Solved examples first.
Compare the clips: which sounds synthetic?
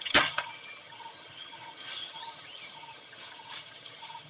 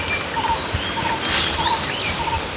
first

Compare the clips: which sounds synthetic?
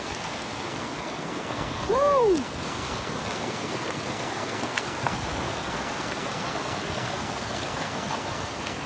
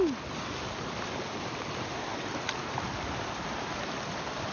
first